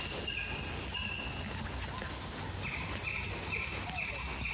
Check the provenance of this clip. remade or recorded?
recorded